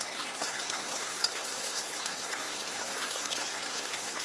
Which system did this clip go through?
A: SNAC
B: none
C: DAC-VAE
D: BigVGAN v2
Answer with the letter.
A